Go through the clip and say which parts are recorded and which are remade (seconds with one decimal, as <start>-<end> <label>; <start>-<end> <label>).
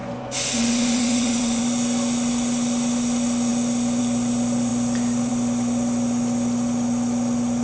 0.0-1.6 remade; 1.6-7.6 recorded